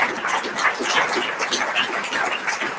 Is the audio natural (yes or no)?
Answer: yes